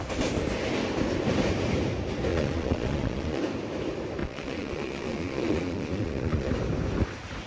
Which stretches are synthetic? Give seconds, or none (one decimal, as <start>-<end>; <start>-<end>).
2.3-3.4; 4.2-6.5